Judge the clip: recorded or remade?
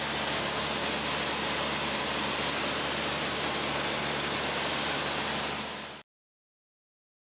recorded